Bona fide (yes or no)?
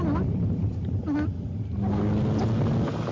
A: yes